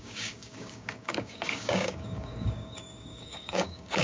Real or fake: fake